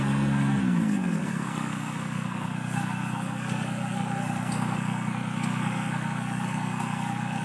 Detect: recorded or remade remade